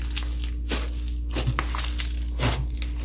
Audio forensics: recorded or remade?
recorded